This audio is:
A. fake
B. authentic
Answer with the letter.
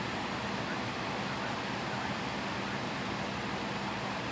B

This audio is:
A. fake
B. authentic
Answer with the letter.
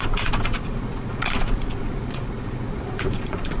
A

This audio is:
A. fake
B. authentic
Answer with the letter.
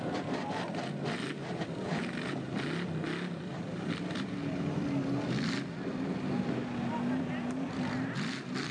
B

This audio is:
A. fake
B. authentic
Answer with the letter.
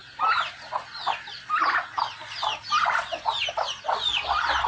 B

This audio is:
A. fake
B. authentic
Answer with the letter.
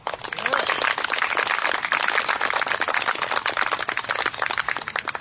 B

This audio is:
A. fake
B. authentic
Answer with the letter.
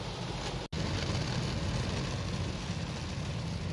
B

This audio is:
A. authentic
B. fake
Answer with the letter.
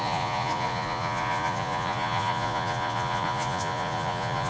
B